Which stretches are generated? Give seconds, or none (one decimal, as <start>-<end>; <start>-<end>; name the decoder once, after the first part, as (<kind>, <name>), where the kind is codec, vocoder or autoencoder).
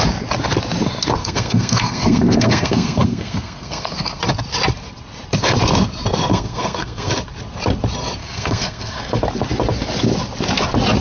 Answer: 1.2-4.2 (codec, SNAC); 6.3-7.1; 8.2-9.0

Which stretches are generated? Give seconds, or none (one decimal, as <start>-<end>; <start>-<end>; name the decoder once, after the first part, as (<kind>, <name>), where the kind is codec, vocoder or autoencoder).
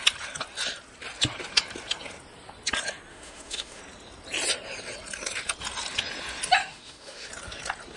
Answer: 3.1-3.8 (autoencoder, DAC-VAE); 6.6-7.3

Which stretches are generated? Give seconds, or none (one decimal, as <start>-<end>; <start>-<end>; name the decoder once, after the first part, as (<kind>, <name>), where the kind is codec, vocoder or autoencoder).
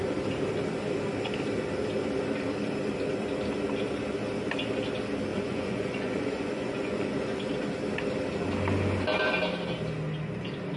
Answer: 5.3-7.5 (vocoder, Vocos)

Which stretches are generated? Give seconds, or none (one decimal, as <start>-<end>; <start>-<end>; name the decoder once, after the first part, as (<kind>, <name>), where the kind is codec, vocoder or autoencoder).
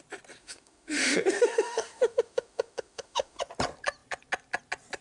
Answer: 0.4-3.4 (autoencoder, DAC-VAE)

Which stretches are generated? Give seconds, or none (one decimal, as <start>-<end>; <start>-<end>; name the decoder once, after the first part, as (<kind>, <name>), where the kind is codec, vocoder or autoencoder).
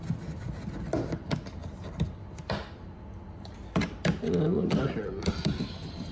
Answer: none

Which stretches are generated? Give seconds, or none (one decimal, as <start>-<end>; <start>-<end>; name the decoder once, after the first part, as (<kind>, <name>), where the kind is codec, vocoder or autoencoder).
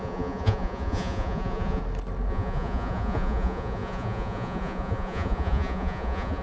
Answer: 0.0-1.8 (vocoder, Vocos); 2.3-6.4